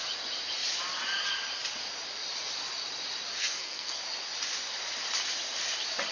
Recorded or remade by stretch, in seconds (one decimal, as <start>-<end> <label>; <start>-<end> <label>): 0.0-3.3 recorded; 3.3-4.0 remade; 4.0-6.1 recorded